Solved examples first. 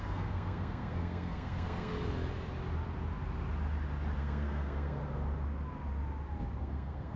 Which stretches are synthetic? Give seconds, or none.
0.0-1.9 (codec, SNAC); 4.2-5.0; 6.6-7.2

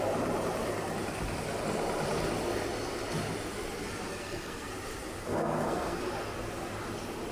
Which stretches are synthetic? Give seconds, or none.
4.1-4.7 (codec, SNAC); 5.2-6.0

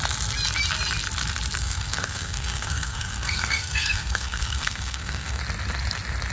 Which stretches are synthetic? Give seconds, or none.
1.6-5.4 (codec, SNAC)